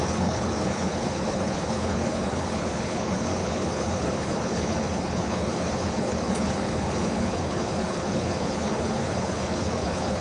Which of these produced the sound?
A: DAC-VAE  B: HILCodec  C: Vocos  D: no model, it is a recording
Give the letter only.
B